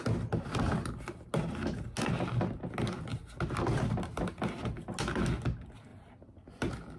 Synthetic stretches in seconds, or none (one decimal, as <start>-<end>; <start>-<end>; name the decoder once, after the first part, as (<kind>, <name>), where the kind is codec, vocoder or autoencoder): none